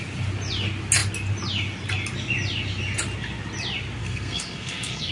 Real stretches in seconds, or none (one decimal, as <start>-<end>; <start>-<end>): 0.0-4.0